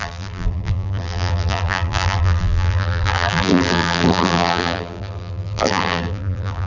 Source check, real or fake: fake